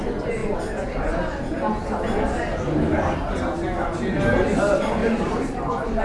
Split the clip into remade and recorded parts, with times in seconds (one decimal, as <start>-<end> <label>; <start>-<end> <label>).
0.0-5.0 recorded; 5.0-6.0 remade